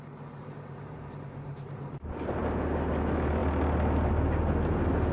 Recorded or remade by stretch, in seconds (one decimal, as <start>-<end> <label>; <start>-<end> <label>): 0.0-0.4 recorded; 0.4-2.4 remade; 2.4-5.1 recorded